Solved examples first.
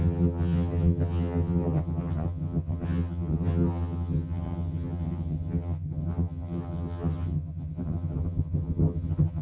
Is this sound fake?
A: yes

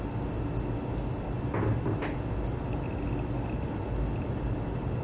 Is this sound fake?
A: no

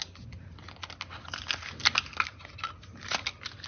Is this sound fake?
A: no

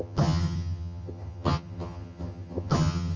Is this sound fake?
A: yes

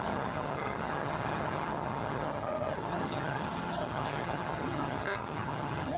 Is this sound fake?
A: yes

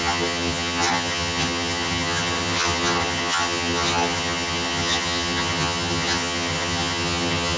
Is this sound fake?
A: yes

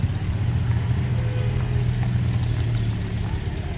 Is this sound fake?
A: no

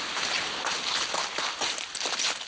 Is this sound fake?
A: no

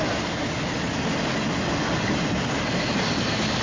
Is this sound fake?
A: no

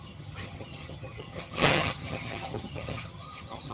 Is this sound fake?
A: yes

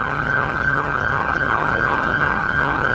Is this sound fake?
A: yes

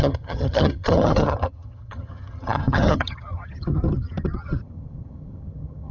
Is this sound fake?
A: yes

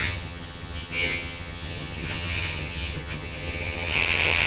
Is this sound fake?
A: yes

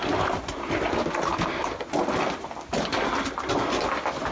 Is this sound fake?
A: no